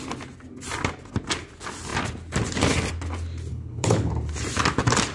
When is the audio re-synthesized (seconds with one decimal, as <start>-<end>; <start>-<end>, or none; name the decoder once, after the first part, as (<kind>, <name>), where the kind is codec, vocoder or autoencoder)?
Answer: 3.5-4.1 (codec, HILCodec)